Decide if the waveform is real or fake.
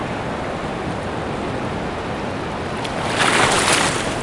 real